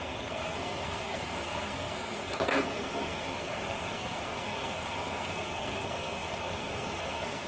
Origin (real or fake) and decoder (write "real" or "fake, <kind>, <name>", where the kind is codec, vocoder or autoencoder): fake, codec, SNAC